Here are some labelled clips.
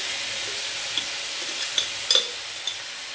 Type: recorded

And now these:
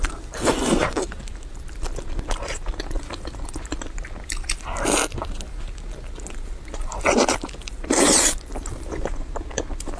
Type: recorded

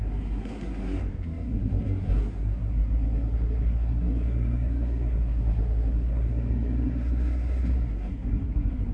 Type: remade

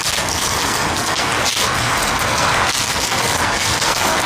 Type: remade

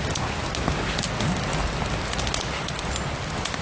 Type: recorded